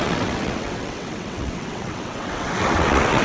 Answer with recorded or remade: remade